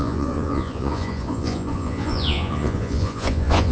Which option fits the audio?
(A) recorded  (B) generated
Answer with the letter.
B